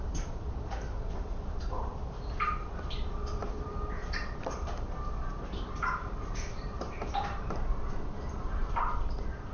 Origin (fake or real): fake